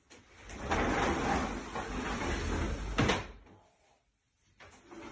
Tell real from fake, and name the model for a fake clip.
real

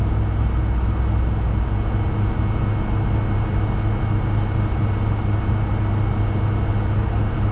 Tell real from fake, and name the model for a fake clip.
real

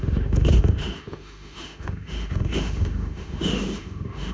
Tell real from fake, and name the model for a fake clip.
fake, autoencoder, DAC-VAE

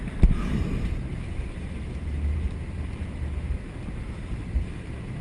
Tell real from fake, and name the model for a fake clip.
fake, vocoder, BigVGAN v2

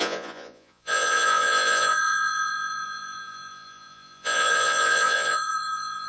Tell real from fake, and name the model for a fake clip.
fake, vocoder, Vocos